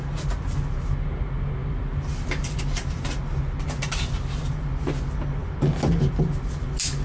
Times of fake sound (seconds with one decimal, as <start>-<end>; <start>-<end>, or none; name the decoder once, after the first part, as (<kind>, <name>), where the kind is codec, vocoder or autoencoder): none